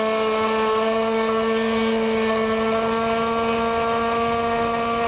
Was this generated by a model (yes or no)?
no